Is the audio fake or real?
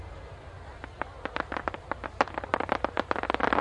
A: real